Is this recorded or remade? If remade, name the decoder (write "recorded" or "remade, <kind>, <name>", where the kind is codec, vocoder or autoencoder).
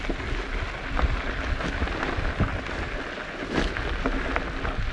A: recorded